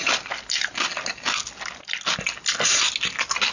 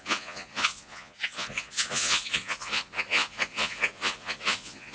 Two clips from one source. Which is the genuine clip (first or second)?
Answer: first